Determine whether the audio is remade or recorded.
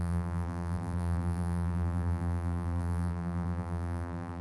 remade